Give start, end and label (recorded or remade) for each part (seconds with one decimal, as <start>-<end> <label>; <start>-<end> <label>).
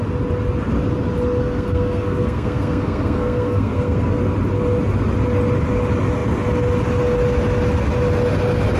0.0-1.4 recorded; 1.4-4.2 remade; 4.2-8.8 recorded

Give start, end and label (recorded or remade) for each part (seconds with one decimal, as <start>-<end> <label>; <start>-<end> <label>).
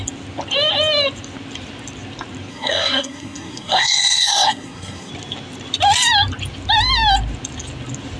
0.0-2.5 recorded; 2.5-5.1 remade; 5.1-8.2 recorded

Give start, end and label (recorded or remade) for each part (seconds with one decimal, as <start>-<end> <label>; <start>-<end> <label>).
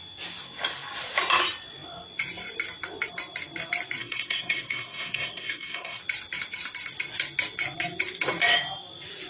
0.0-4.0 recorded; 4.0-6.0 remade; 6.0-9.3 recorded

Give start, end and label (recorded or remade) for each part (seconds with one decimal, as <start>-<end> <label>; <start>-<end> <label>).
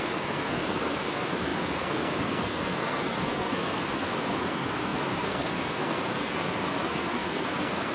0.0-7.9 remade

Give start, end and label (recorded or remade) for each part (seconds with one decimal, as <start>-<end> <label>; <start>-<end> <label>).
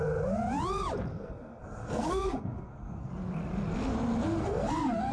0.0-1.1 recorded; 1.1-3.1 remade; 3.1-4.4 recorded; 4.4-5.1 remade